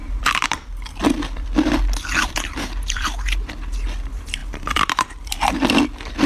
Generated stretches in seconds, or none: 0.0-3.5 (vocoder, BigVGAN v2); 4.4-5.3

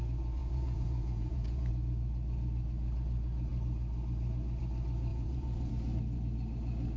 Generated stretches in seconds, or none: 0.4-1.7 (vocoder, Vocos); 5.1-5.7

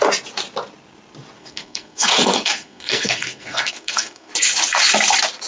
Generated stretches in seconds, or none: 1.4-4.3 (codec, SNAC)